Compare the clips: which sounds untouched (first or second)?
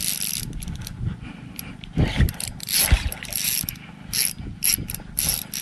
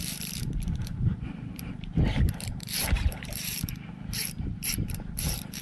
first